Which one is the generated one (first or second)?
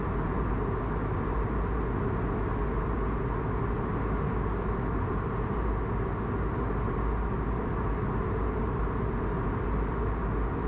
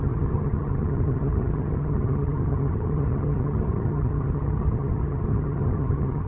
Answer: second